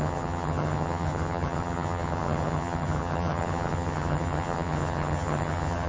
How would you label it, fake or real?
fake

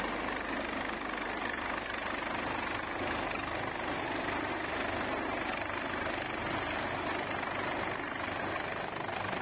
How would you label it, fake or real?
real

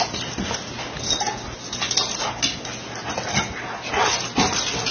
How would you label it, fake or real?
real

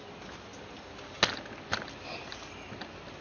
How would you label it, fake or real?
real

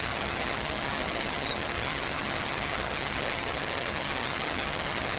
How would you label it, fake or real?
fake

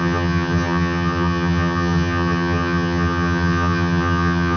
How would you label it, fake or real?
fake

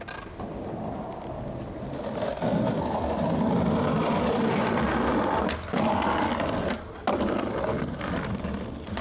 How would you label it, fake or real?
real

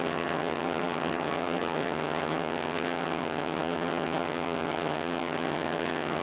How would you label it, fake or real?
fake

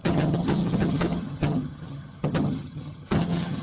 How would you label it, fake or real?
fake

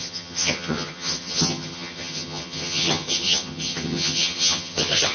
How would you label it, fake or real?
fake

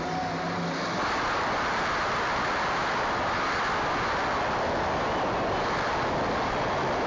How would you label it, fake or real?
real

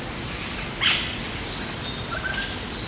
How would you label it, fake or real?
real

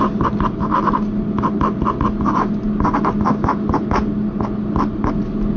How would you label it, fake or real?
real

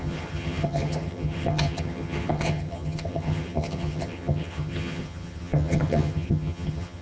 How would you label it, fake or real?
fake